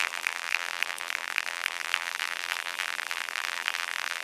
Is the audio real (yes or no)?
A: no